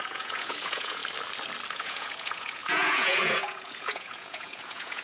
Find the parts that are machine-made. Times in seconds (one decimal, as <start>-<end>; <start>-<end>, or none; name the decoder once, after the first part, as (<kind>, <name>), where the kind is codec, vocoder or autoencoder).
0.0-1.0 (vocoder, Vocos); 1.7-5.0